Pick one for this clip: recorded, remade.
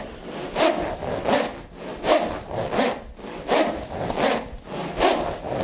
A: recorded